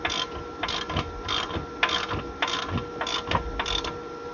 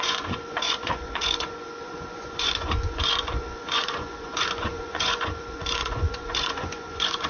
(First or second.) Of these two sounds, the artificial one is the second